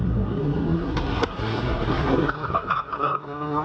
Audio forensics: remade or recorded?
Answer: remade